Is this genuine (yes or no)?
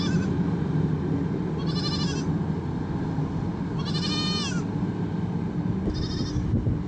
yes